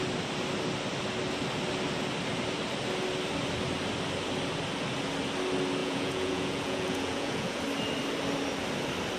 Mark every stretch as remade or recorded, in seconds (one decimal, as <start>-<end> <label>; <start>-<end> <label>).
0.0-5.8 recorded; 5.8-7.6 remade; 7.6-9.2 recorded